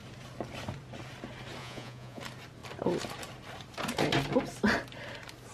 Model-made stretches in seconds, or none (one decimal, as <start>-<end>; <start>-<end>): 1.6-2.2